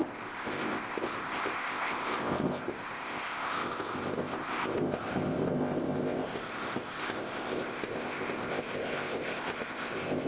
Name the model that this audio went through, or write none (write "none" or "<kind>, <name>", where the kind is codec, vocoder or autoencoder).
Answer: codec, ZipCodec